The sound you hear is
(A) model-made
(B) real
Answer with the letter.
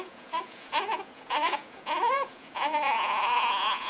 A